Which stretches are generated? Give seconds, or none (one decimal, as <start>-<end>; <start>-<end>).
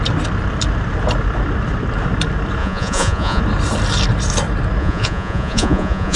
2.6-3.4; 4.8-6.2